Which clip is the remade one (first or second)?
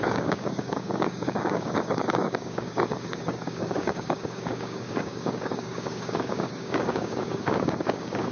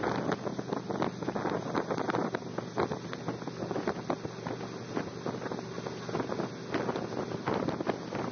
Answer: first